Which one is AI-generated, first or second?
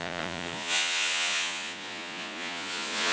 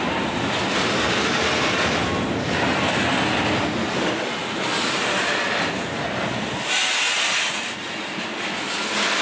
first